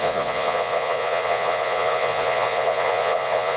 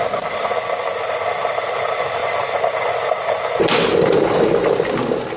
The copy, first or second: first